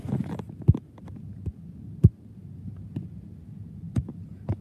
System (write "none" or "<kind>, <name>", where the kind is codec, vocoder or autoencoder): none